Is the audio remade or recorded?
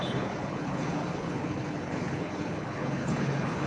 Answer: remade